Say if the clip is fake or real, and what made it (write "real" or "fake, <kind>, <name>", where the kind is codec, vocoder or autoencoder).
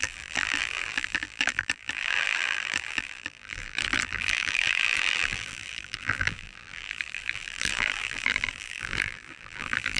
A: fake, vocoder, BigVGAN v2